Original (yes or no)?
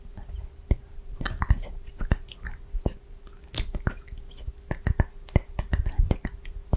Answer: yes